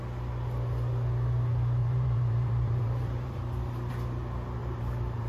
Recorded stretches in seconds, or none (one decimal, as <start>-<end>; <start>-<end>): 0.0-1.8; 3.9-4.6

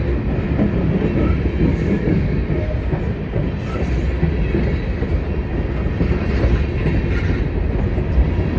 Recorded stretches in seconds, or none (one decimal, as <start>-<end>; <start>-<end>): 0.0-1.7; 2.5-8.6